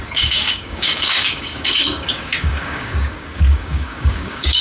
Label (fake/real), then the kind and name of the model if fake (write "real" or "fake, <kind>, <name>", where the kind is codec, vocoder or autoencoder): fake, codec, DAC